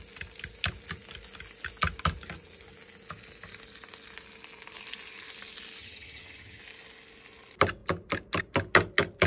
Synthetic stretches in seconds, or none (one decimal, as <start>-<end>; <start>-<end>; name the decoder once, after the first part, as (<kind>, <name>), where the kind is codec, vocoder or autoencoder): 5.8-6.6 (vocoder, HiFi-GAN)